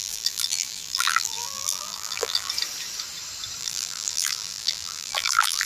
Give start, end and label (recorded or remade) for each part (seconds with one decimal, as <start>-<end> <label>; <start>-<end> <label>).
0.0-2.5 remade; 2.5-3.6 recorded; 3.6-5.7 remade